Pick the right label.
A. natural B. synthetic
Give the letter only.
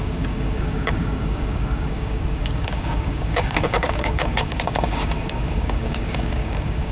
B